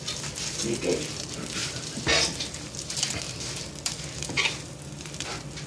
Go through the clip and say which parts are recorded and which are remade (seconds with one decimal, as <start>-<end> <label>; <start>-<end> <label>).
0.0-5.7 recorded